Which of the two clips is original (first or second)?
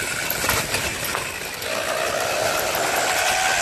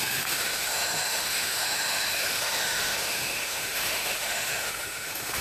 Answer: first